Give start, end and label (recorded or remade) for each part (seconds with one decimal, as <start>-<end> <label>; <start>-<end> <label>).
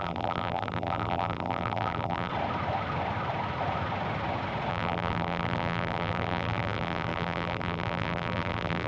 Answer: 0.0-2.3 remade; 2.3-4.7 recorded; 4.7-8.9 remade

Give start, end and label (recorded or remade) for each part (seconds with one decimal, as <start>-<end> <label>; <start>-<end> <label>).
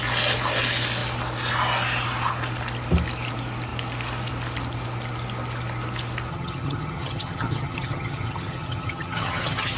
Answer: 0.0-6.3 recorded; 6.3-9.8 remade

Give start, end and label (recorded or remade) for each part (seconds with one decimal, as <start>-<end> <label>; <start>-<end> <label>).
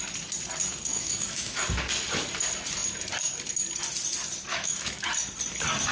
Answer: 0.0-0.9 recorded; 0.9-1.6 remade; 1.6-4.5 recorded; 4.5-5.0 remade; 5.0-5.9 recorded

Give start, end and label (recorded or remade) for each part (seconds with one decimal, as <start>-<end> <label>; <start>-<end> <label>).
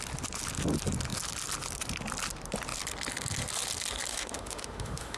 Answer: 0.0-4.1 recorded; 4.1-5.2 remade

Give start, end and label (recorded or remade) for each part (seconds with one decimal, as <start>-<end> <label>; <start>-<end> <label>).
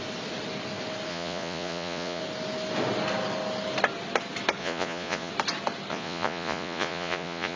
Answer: 0.0-1.1 recorded; 1.1-2.2 remade; 2.2-4.6 recorded; 4.6-5.3 remade; 5.3-5.9 recorded; 5.9-7.6 remade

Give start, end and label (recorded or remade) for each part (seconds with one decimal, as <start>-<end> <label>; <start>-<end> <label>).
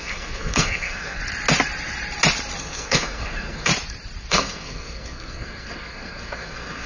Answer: 0.0-1.2 remade; 1.2-2.6 recorded; 2.6-3.7 remade; 3.7-4.3 recorded; 4.3-6.9 remade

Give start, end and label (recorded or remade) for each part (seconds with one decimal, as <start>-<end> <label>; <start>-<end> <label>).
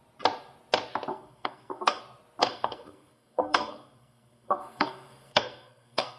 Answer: 0.0-1.1 recorded; 1.1-2.0 remade; 2.0-2.4 recorded; 2.4-6.2 remade